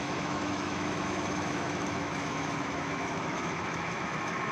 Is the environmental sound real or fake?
fake